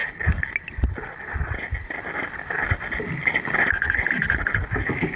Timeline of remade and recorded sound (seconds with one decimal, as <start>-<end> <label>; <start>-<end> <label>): 0.0-5.2 recorded